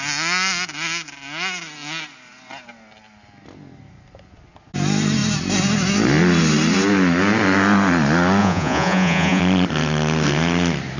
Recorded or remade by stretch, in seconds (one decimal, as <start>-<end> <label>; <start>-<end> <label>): 0.0-8.4 recorded; 8.4-9.4 remade; 9.4-11.0 recorded